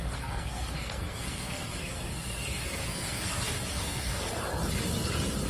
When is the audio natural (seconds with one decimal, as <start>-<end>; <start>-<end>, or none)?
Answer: 3.3-3.7; 4.3-5.5